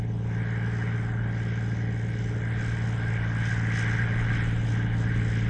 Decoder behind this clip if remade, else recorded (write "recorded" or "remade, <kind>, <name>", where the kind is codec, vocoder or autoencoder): recorded